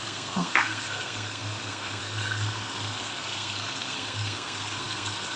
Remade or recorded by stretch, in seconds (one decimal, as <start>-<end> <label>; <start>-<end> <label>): 0.0-5.4 remade